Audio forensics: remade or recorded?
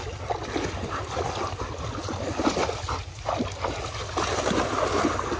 recorded